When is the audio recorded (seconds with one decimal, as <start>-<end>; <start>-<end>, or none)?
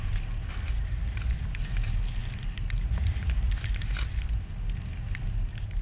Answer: 0.0-5.8